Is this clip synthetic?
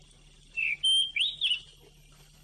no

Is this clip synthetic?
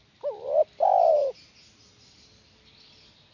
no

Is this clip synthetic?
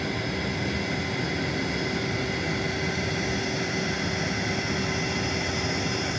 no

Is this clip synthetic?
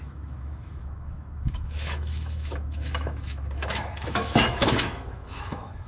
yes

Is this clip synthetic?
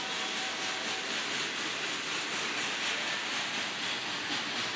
no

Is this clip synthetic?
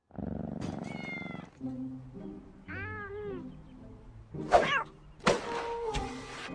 no